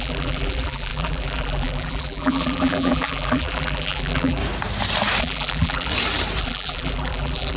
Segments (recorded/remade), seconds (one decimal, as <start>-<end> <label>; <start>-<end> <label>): 0.0-4.4 remade; 4.4-5.2 recorded; 5.2-5.9 remade; 5.9-6.4 recorded; 6.4-7.6 remade

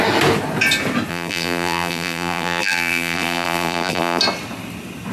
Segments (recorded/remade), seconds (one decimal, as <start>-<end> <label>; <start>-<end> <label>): 0.0-1.1 recorded; 1.1-4.2 remade; 4.2-5.1 recorded

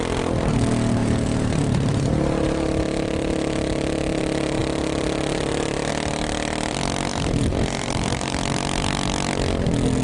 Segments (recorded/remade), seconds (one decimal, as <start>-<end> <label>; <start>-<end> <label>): 0.0-1.0 recorded; 1.0-2.1 remade; 2.1-7.1 recorded; 7.1-8.4 remade; 8.4-10.0 recorded